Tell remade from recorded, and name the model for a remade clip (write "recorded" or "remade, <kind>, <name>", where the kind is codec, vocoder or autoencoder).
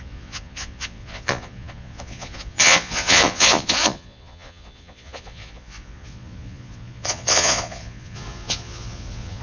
remade, vocoder, Vocos